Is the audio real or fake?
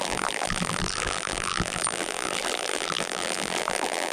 fake